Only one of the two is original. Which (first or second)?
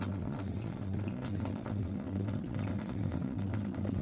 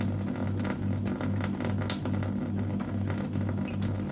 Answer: second